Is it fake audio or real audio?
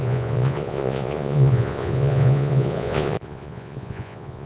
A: fake